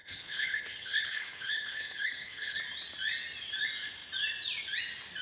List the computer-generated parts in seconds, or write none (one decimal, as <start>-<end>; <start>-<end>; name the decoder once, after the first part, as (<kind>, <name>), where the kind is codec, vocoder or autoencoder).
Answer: 0.0-2.6 (codec, HILCodec)